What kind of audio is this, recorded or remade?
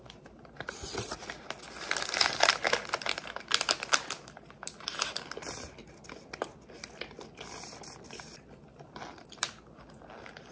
recorded